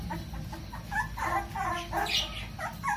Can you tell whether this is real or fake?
real